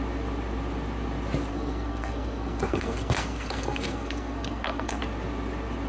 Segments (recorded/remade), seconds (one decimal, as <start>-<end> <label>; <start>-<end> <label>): 0.0-1.5 recorded; 1.5-5.0 remade; 5.0-5.9 recorded